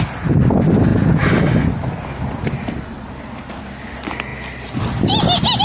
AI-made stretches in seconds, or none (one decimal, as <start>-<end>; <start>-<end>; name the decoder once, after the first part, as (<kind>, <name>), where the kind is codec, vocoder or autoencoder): none